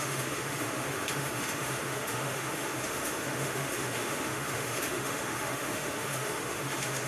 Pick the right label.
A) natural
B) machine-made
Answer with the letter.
B